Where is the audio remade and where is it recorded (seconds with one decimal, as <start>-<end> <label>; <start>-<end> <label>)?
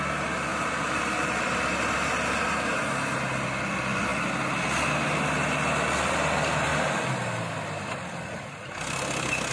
0.0-0.5 recorded; 0.5-3.2 remade; 3.2-9.5 recorded